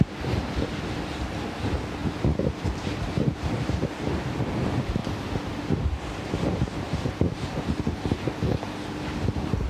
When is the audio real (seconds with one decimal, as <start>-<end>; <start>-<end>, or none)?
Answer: 0.0-2.0; 4.4-5.0; 7.8-9.7